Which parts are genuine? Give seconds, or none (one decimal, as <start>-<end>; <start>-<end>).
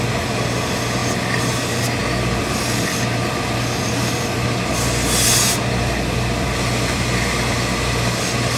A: 0.0-8.6